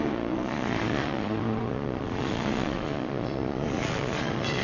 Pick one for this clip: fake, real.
fake